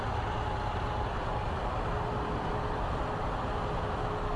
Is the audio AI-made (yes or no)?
no